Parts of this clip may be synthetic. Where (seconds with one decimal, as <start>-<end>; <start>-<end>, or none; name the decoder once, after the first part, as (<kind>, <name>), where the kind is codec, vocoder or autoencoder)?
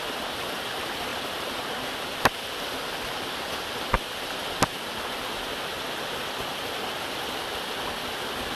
none